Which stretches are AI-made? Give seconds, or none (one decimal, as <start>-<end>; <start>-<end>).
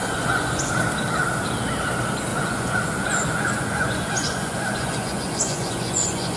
0.0-0.7; 2.3-6.4